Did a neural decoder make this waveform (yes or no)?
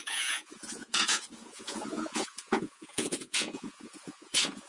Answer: yes